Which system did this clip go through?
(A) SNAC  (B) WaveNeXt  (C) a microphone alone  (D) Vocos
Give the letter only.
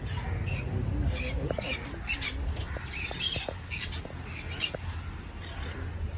C